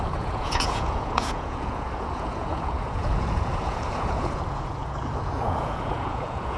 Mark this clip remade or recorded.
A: remade